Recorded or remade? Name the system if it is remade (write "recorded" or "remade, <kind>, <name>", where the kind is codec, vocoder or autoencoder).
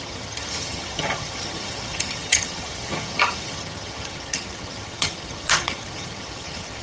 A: remade, vocoder, HiFi-GAN